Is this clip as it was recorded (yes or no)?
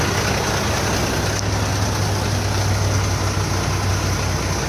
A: yes